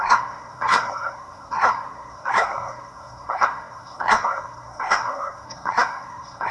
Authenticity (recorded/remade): remade